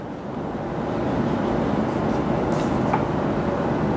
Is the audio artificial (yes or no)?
no